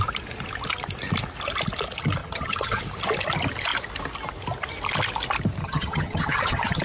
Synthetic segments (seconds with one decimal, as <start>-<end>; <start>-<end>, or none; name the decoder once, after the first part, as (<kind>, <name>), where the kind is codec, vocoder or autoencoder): 2.2-2.8 (vocoder, HiFi-GAN); 5.6-6.8

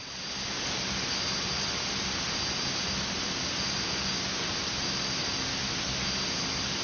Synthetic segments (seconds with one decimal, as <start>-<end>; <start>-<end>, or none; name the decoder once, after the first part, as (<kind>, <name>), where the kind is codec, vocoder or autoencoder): none

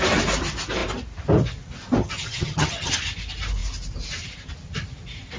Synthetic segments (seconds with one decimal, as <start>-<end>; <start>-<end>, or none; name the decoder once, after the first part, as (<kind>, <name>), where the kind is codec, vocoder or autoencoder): 2.0-2.9 (vocoder, HiFi-GAN)

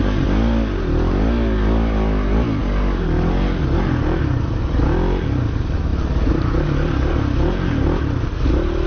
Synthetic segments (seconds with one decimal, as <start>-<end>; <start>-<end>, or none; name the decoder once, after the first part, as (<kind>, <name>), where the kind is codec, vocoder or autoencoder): none